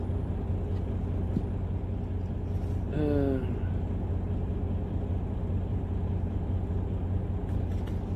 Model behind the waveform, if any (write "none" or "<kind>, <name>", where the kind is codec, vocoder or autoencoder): none